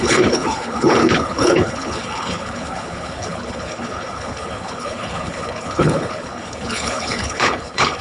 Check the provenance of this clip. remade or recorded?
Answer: remade